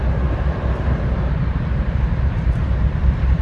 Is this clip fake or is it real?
fake